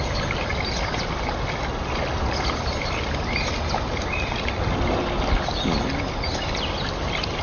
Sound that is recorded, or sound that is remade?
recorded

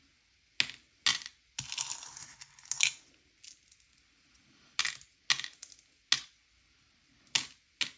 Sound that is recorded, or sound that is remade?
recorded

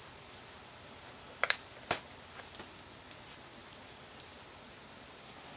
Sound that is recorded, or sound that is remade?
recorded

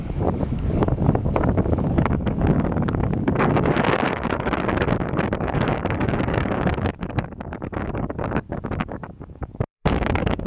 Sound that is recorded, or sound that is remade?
remade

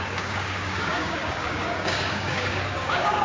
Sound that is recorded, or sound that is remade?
remade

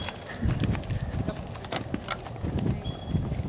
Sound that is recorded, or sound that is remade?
recorded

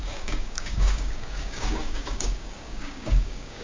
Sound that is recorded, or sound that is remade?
remade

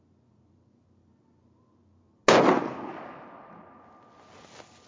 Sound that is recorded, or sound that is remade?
recorded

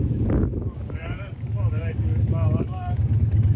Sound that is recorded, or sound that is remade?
remade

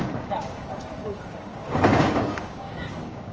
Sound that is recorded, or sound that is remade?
remade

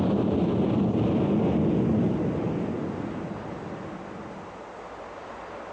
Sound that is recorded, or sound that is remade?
recorded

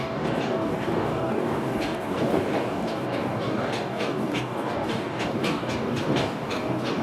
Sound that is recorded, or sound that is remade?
remade